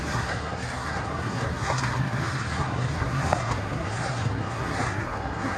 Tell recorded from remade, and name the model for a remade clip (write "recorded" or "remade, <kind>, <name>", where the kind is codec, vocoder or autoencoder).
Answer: remade, codec, SNAC